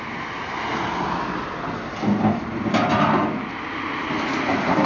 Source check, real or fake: real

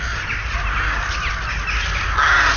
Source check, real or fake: real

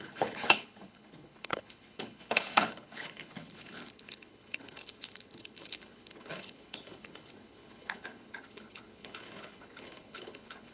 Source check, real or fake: fake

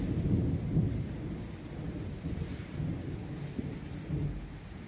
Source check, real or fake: real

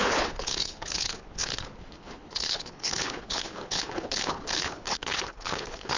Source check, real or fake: fake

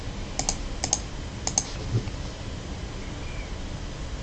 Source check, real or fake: real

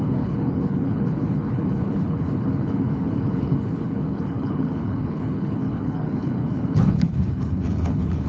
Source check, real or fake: fake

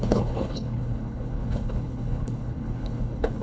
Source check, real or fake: fake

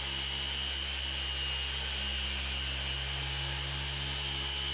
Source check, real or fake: real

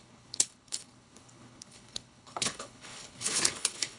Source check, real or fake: fake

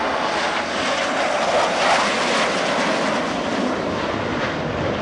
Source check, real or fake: real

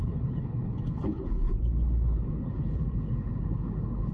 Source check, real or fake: fake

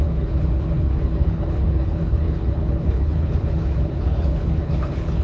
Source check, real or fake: fake